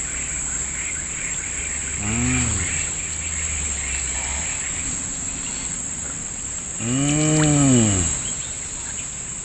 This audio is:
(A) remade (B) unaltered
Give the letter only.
B